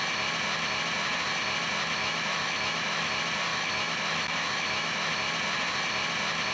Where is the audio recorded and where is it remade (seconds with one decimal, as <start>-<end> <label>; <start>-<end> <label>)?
0.0-2.0 recorded; 2.0-3.1 remade; 3.1-3.5 recorded; 3.5-5.1 remade; 5.1-6.5 recorded